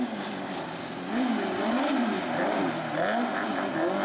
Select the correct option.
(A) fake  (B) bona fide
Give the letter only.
B